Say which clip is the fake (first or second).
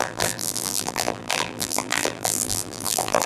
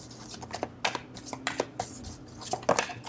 first